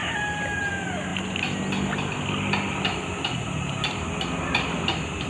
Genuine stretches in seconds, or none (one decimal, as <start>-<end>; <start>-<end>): 0.0-5.3